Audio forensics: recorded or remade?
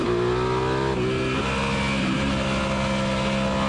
recorded